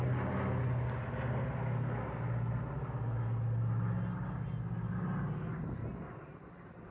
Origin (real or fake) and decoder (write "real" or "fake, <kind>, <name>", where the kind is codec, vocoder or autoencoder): real